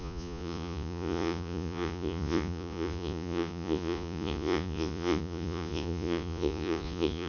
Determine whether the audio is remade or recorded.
remade